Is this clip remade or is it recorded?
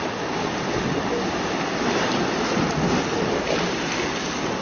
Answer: recorded